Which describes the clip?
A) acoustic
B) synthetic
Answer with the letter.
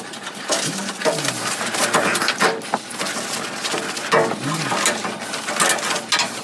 A